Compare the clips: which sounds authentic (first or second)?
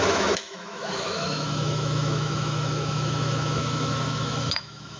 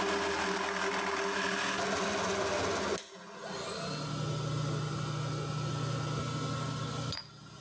second